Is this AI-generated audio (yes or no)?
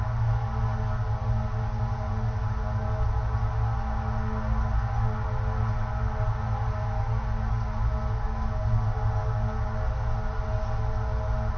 no